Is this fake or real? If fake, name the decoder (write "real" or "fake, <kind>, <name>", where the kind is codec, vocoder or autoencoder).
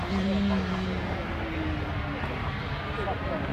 real